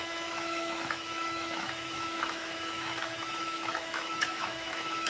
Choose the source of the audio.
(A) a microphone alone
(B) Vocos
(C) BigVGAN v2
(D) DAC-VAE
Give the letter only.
D